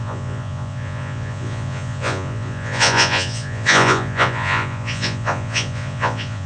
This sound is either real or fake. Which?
fake